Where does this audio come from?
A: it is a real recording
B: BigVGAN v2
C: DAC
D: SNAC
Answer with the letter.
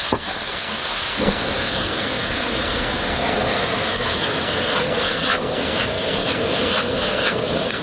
D